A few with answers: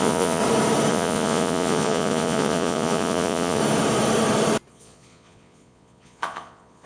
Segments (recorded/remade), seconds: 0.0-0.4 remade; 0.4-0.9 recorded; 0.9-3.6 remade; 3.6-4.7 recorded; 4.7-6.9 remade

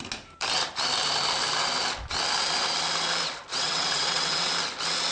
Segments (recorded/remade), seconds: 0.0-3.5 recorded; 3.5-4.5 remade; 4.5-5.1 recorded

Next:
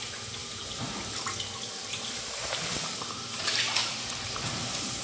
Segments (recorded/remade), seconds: 0.0-0.4 recorded; 0.4-1.2 remade; 1.2-1.8 recorded; 1.8-5.0 remade

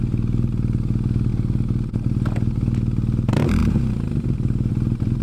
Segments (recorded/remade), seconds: 0.0-5.2 remade